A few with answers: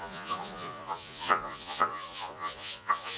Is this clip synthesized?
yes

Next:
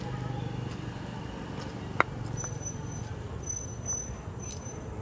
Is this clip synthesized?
no